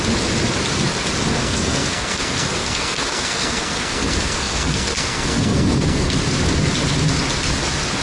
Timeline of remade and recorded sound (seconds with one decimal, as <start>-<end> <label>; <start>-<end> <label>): 0.0-1.4 recorded; 1.4-6.2 remade; 6.2-8.0 recorded

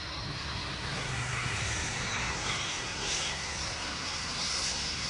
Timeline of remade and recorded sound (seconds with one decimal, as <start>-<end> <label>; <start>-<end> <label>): 0.0-5.1 remade

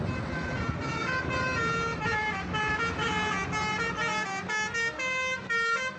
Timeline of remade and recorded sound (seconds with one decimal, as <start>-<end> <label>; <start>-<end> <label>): 0.0-0.9 recorded; 0.9-2.7 remade; 2.7-6.0 recorded

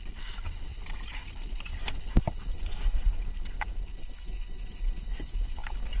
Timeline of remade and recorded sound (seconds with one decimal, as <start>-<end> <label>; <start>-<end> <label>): 0.0-6.0 recorded

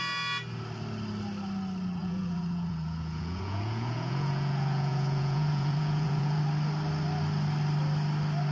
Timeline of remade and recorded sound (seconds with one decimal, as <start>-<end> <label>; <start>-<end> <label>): 0.0-2.0 recorded; 2.0-6.4 remade; 6.4-8.5 recorded

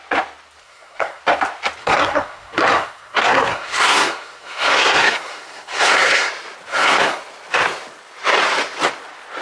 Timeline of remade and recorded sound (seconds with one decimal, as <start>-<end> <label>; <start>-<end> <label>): 0.0-0.6 recorded; 0.6-1.2 remade; 1.2-1.8 recorded; 1.8-6.3 remade; 6.3-6.7 recorded; 6.7-7.2 remade; 7.2-9.4 recorded